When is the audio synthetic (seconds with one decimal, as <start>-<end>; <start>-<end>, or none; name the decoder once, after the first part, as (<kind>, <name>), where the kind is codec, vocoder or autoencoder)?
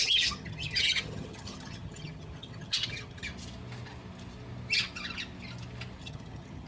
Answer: 0.0-3.3 (vocoder, HiFi-GAN); 6.0-6.7